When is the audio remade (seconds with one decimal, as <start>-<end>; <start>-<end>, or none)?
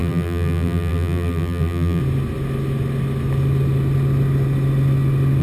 0.0-2.0